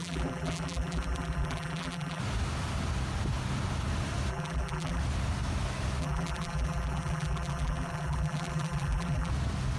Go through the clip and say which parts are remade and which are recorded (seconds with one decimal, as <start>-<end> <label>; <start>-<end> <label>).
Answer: 0.0-2.2 remade; 2.2-4.3 recorded; 4.3-5.0 remade; 5.0-6.0 recorded; 6.0-9.3 remade; 9.3-9.8 recorded